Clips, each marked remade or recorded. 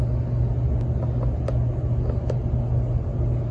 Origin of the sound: recorded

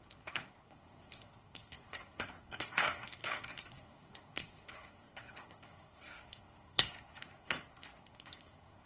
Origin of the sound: remade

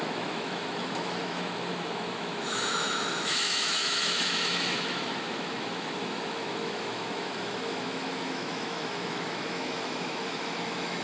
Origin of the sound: remade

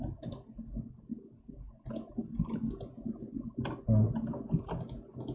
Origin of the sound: recorded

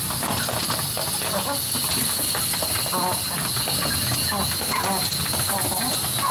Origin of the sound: recorded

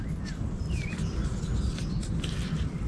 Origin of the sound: recorded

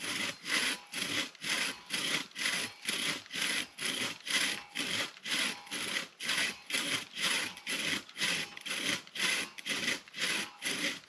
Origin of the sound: remade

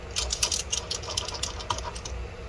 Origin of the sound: recorded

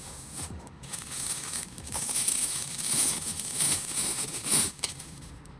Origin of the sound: remade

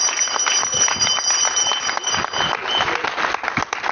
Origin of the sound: recorded